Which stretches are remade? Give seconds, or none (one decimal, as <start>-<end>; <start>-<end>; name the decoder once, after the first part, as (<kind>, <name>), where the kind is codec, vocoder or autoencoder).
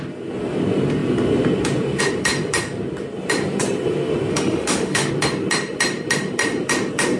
4.3-5.1 (autoencoder, DAC-VAE)